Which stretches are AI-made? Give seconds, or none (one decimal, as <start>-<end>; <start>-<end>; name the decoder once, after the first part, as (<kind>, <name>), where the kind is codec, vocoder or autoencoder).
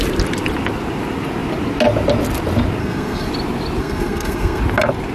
2.8-3.3 (codec, SNAC); 3.8-4.6